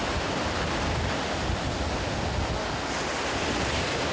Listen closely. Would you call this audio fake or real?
real